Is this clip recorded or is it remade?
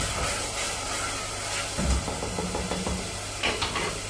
recorded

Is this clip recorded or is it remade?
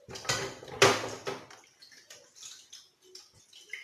recorded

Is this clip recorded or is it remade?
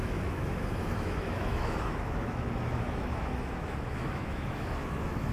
remade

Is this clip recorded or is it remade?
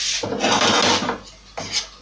recorded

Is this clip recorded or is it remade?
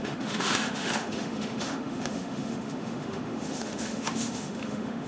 remade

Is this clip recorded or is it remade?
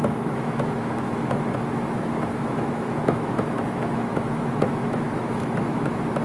remade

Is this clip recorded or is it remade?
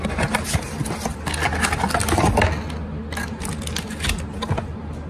recorded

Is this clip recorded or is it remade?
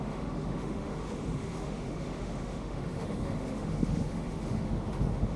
remade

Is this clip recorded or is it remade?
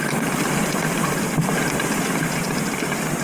recorded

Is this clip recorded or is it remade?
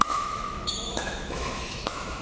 remade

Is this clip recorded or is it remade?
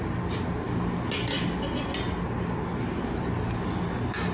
recorded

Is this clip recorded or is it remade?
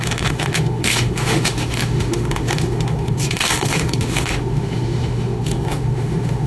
remade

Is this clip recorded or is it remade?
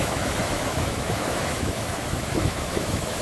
remade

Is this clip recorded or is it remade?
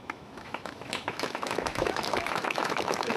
remade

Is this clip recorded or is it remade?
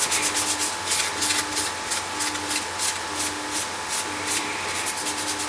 recorded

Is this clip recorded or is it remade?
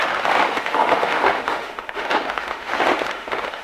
remade